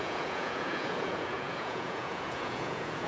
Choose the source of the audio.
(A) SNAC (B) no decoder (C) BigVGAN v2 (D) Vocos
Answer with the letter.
D